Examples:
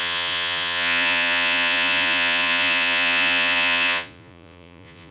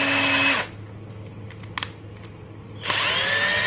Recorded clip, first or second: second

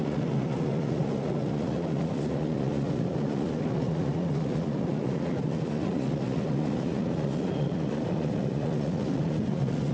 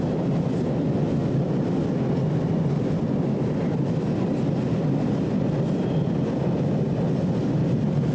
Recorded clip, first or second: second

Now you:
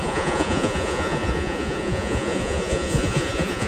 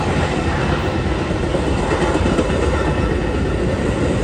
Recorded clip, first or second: second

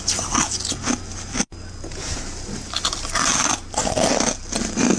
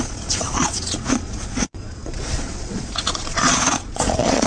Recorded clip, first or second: first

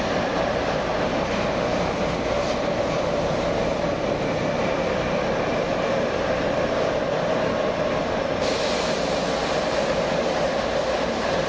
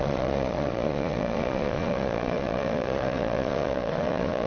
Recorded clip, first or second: first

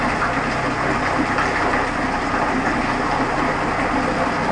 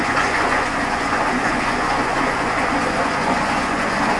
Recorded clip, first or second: first